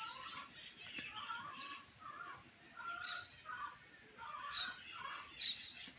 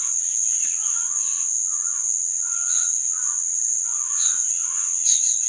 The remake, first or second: second